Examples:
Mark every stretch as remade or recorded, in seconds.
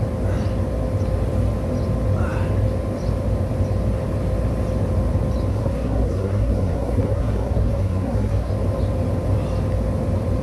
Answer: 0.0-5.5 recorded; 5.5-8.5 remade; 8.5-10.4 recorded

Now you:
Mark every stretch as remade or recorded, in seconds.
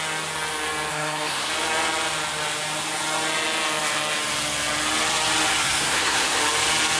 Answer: 0.0-0.9 recorded; 0.9-1.5 remade; 1.5-5.6 recorded; 5.6-6.4 remade; 6.4-7.0 recorded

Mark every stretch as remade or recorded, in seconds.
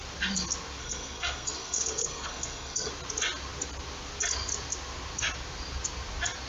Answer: 0.0-0.8 recorded; 0.8-2.9 remade; 2.9-6.5 recorded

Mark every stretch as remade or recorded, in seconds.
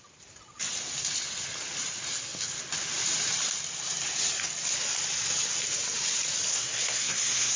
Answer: 0.0-6.5 recorded; 6.5-7.6 remade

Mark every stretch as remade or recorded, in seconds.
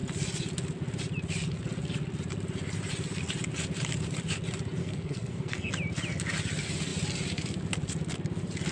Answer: 0.0-4.8 recorded; 4.8-5.7 remade; 5.7-8.7 recorded